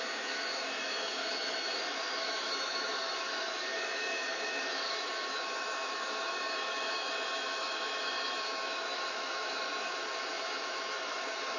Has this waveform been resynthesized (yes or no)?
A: yes